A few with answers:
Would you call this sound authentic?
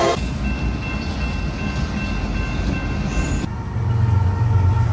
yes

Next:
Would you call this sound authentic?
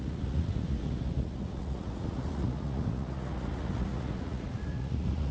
no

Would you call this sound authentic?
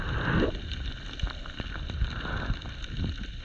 yes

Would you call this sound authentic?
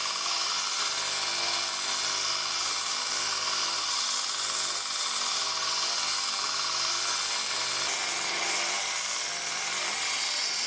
yes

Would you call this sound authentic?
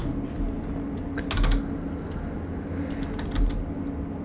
yes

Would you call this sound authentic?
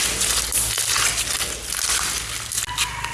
yes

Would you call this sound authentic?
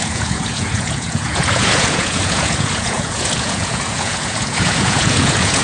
no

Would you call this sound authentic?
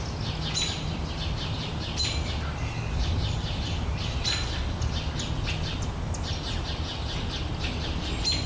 yes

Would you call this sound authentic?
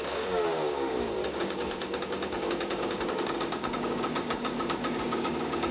no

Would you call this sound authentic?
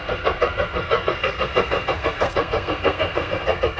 no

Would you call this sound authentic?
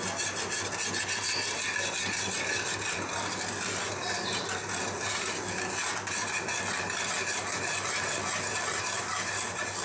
yes